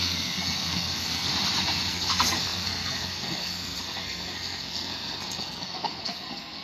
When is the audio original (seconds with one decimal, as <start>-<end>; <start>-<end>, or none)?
1.3-1.9